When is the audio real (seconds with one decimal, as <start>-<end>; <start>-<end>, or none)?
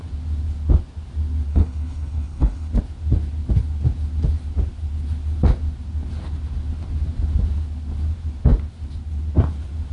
0.0-1.5; 2.7-9.9